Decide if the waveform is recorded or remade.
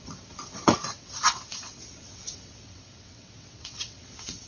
remade